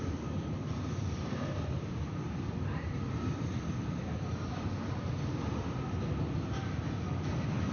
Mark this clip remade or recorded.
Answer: remade